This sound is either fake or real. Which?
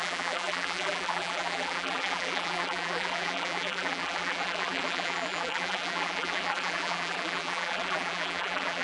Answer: fake